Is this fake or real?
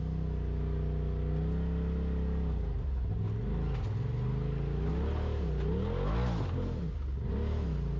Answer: real